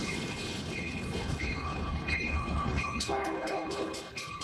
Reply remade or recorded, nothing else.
remade